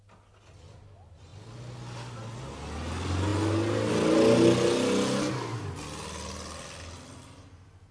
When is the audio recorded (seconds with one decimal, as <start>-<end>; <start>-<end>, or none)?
0.0-7.9